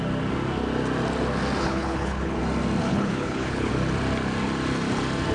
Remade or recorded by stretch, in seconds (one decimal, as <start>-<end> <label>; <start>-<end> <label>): 0.0-1.6 recorded; 1.6-2.4 remade; 2.4-2.8 recorded; 2.8-3.7 remade; 3.7-5.3 recorded